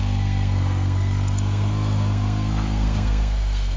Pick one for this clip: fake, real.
fake